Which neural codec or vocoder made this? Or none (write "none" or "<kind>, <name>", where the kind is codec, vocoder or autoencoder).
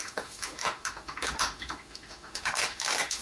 autoencoder, DAC-VAE